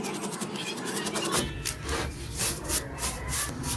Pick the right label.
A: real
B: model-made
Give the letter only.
A